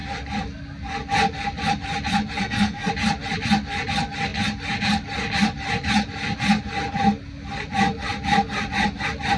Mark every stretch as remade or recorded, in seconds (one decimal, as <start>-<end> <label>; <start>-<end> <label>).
0.0-2.4 recorded; 2.4-2.9 remade; 2.9-9.4 recorded